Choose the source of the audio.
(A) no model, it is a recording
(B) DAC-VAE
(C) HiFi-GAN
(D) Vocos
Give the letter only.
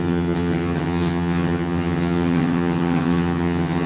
C